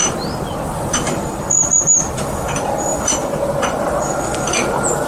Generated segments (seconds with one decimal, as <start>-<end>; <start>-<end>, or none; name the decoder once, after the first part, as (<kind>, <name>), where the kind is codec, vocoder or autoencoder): 0.0-1.8 (vocoder, BigVGAN v2)